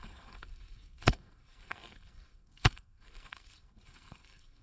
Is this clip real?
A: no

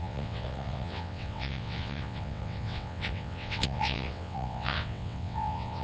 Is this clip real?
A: no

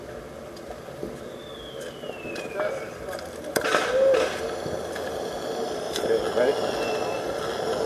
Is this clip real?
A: yes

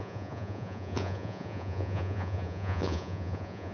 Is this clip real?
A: no